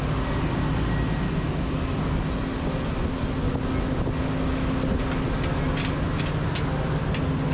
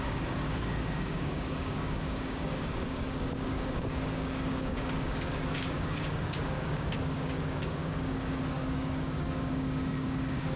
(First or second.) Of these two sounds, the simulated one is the second